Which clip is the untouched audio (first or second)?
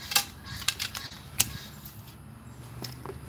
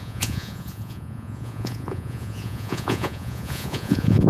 first